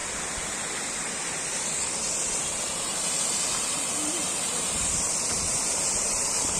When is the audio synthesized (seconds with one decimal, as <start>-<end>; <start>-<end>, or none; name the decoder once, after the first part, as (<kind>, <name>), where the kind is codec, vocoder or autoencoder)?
0.9-6.6 (vocoder, BigVGAN v2)